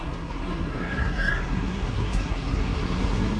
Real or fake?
fake